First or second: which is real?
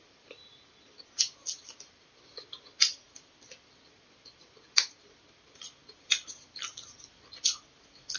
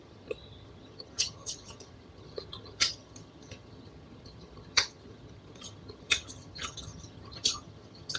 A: first